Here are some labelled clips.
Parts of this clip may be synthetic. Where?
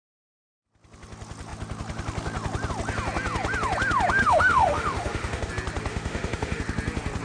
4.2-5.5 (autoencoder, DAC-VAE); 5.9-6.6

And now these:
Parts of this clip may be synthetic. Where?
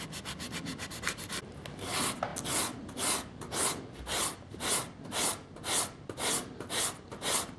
none